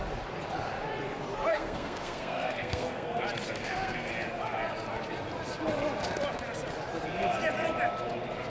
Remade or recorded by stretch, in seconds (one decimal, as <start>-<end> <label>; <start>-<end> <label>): 0.0-1.5 recorded; 1.5-3.2 remade; 3.2-3.6 recorded; 3.6-4.1 remade; 4.1-8.5 recorded